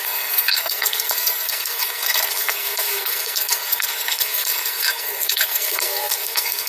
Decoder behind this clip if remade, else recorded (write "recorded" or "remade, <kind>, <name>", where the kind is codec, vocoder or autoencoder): remade, codec, SNAC